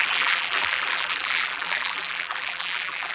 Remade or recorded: remade